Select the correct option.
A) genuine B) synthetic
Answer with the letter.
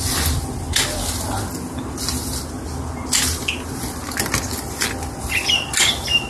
A